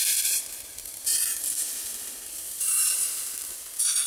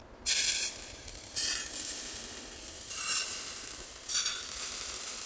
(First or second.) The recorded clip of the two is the second